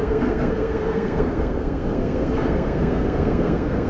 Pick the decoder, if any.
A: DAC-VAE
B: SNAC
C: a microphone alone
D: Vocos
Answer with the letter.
B